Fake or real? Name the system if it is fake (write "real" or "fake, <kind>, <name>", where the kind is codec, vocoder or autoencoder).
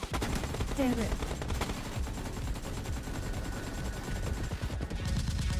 fake, vocoder, BigVGAN v2